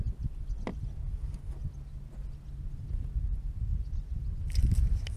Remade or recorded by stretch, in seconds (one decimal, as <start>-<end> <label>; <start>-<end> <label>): 0.0-5.2 recorded